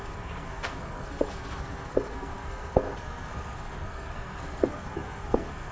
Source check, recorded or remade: remade